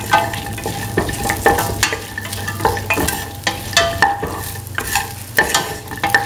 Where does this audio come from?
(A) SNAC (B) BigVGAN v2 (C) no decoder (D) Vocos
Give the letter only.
C